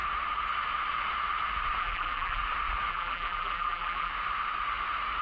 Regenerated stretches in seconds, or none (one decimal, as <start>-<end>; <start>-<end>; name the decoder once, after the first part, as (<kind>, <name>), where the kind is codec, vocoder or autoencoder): 1.8-2.4 (vocoder, BigVGAN v2); 2.9-4.1